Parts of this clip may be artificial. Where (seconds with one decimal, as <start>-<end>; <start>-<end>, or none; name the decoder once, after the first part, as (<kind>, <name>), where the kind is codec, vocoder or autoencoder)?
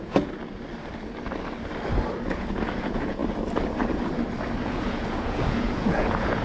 0.0-0.4 (vocoder, Vocos); 2.3-3.2; 4.6-6.4